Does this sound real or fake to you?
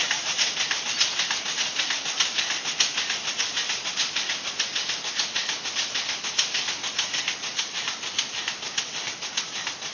real